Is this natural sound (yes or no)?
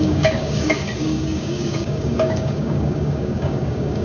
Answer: no